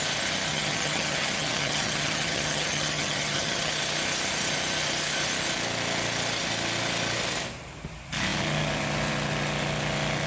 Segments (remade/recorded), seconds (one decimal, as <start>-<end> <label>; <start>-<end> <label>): 0.0-0.5 recorded; 0.5-3.7 remade; 3.7-10.3 recorded